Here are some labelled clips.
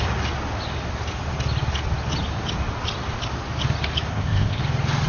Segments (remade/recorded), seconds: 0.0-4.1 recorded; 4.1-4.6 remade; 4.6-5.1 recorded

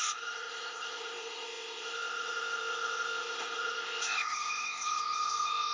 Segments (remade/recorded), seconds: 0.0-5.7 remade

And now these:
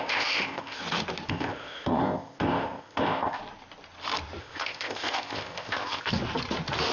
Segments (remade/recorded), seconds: 0.0-0.8 remade; 0.8-1.3 recorded; 1.3-3.4 remade; 3.4-4.4 recorded; 4.4-6.1 remade; 6.1-6.9 recorded